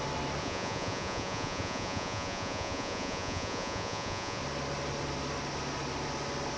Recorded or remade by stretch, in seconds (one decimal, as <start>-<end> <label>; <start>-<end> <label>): 0.0-0.4 recorded; 0.4-4.4 remade; 4.4-6.6 recorded